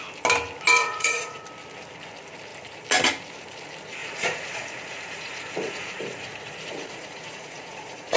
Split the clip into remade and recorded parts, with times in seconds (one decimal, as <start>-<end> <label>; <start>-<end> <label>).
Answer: 0.0-0.8 recorded; 0.8-1.4 remade; 1.4-4.0 recorded; 4.0-8.2 remade